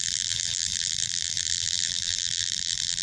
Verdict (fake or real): fake